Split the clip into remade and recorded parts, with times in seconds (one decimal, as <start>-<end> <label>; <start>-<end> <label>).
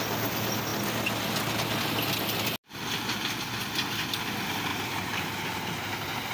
0.0-4.7 recorded; 4.7-5.7 remade; 5.7-6.3 recorded